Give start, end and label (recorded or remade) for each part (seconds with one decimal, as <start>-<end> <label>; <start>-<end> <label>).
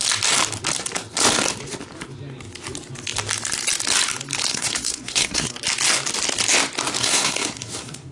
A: 0.0-4.5 recorded; 4.5-5.5 remade; 5.5-7.0 recorded; 7.0-8.1 remade